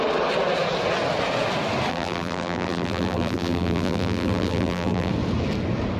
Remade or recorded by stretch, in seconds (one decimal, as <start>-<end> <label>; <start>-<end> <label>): 0.0-1.9 recorded; 1.9-5.1 remade; 5.1-6.0 recorded